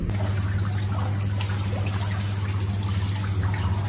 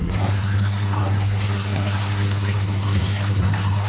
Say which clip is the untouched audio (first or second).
first